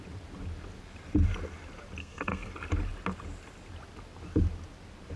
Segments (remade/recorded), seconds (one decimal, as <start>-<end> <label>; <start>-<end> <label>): 0.0-2.0 recorded; 2.0-2.5 remade; 2.5-5.2 recorded